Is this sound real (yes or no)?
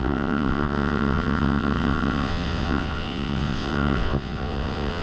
no